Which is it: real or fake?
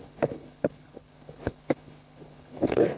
fake